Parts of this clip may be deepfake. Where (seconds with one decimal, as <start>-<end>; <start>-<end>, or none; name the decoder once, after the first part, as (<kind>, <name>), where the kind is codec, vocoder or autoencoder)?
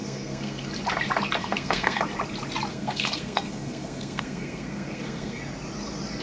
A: 0.0-0.7 (codec, SNAC); 1.4-2.0; 2.7-5.4